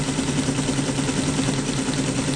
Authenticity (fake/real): real